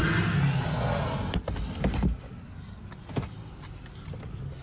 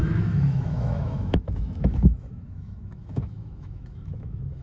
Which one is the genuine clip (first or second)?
first